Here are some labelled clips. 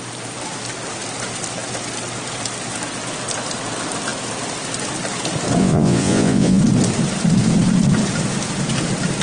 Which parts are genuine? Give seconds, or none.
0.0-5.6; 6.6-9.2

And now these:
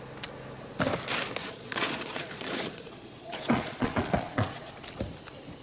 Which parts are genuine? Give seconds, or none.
0.0-1.4; 4.7-5.6

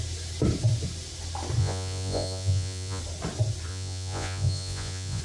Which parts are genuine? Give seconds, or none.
0.0-1.6; 3.0-3.7